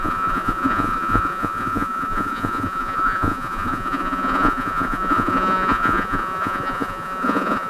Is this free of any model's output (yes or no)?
no